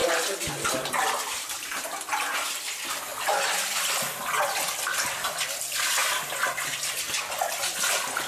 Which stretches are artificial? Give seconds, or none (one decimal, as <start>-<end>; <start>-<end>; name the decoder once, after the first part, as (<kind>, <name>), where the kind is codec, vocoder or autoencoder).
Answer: none